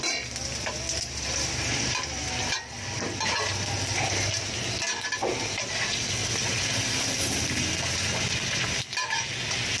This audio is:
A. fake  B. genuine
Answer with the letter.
B